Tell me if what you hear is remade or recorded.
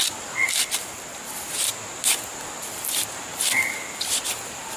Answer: recorded